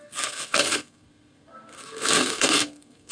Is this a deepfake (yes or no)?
yes